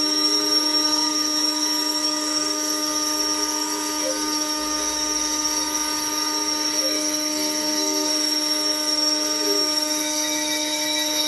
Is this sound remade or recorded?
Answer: remade